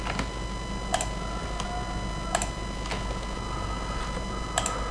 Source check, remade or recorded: recorded